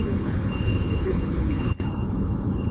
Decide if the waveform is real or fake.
fake